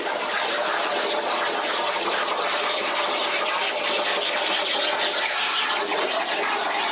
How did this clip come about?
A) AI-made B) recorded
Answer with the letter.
B